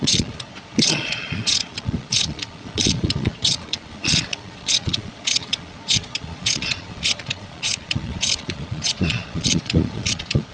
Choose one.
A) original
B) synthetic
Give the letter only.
B